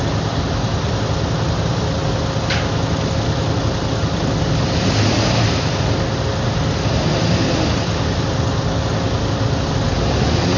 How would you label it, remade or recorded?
recorded